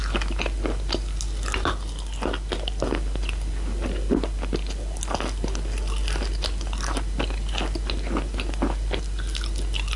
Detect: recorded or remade recorded